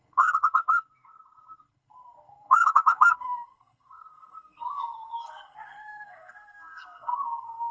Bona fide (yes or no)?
no